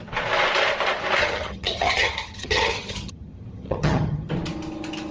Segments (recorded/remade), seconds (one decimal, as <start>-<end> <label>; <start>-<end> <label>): 0.0-1.2 recorded; 1.2-4.3 remade; 4.3-5.1 recorded